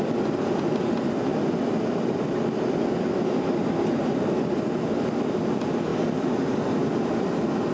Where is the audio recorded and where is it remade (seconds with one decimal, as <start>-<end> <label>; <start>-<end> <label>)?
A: 0.0-7.7 recorded